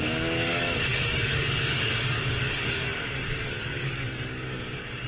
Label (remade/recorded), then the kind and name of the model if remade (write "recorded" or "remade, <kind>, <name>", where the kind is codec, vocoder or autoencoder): remade, codec, DAC